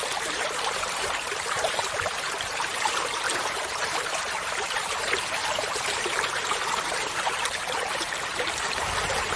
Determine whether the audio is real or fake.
fake